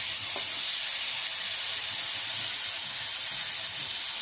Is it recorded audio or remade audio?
recorded